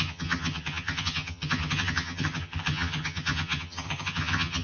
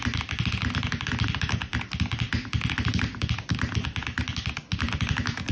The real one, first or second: second